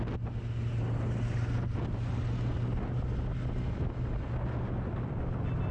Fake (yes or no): no